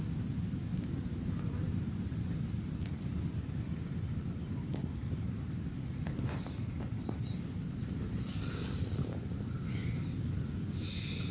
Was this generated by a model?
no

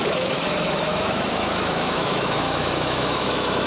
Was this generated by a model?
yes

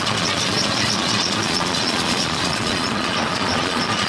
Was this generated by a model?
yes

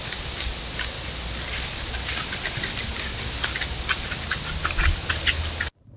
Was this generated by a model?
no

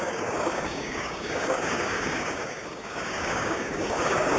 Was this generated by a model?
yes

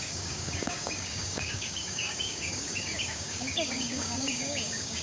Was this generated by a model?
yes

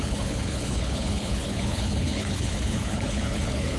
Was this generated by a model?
yes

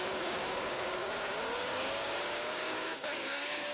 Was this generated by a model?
yes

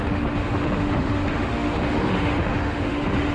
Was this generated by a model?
yes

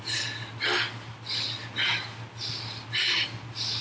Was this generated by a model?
no